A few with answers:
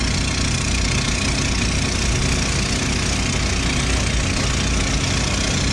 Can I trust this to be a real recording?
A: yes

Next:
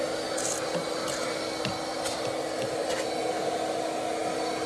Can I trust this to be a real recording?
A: yes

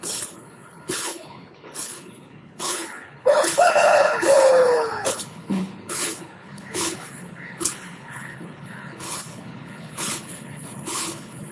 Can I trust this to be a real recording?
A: no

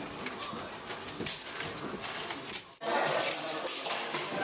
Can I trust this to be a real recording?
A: yes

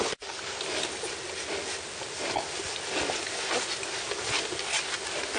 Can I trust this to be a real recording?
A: yes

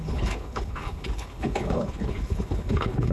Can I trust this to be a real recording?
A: no